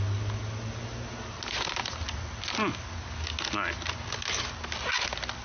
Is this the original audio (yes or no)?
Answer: yes